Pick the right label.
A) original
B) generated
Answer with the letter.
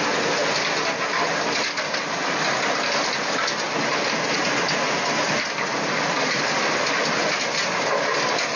A